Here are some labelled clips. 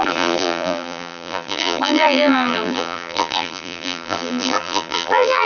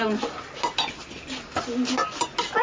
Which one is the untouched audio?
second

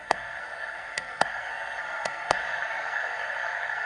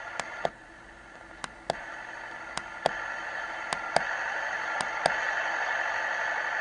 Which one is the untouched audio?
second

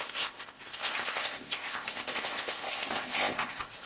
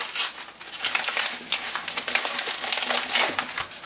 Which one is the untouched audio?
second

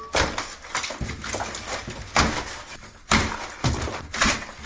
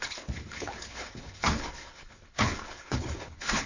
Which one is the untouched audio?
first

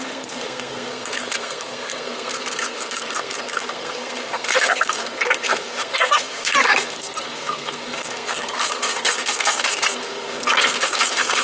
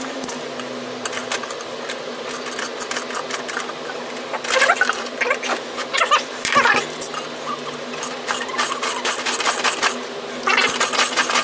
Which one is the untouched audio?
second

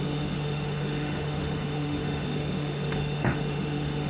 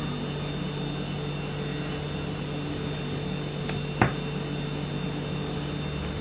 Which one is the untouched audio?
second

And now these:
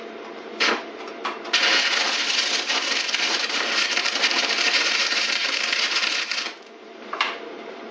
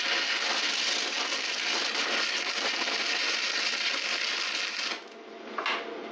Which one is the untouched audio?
second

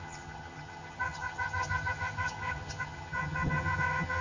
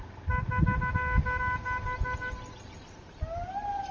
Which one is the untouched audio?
second